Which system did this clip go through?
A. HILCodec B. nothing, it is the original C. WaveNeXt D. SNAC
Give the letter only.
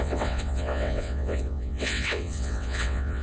C